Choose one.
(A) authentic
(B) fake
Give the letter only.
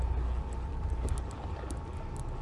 A